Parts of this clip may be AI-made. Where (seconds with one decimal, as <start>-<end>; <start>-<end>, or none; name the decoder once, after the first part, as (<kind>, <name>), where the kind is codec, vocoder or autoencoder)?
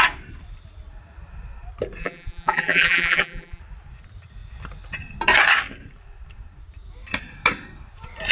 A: 2.0-3.6 (vocoder, BigVGAN v2)